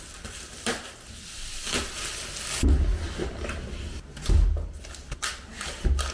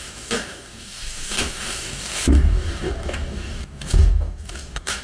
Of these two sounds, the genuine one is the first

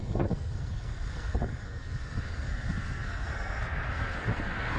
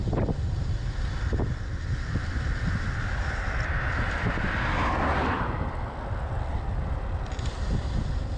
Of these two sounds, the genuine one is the second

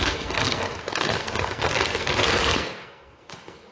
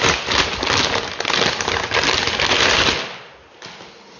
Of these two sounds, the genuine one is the second